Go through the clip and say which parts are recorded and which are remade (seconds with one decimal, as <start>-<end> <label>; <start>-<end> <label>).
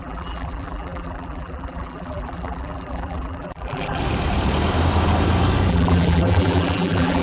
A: 0.0-4.0 remade; 4.0-5.7 recorded; 5.7-7.2 remade